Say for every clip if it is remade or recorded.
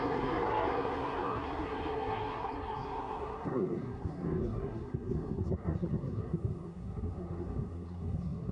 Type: remade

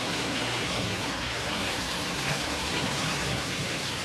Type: remade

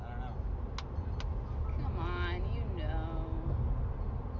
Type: recorded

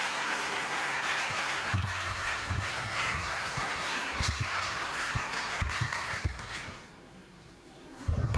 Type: remade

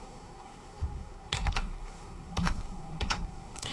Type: remade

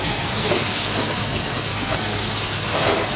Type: remade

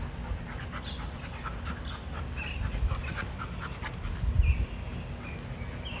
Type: recorded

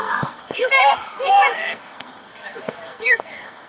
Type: remade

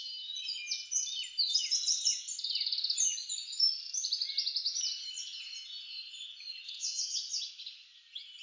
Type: recorded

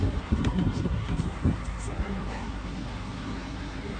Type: remade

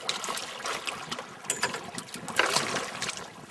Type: recorded